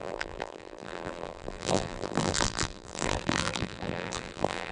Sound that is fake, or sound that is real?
fake